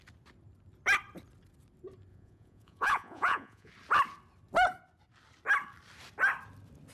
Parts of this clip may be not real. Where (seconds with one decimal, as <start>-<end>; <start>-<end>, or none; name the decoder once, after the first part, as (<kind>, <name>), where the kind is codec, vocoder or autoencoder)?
2.1-3.7 (vocoder, Vocos)